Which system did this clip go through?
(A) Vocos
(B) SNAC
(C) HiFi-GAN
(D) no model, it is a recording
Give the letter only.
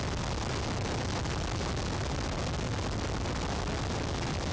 D